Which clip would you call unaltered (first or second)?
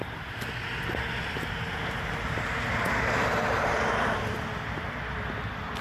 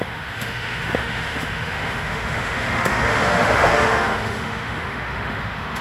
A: first